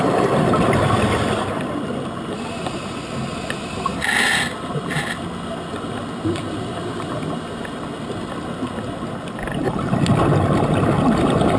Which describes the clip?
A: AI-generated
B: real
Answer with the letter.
B